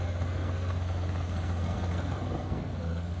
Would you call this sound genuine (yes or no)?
no